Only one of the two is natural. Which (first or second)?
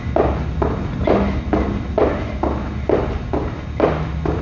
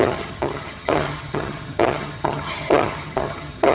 first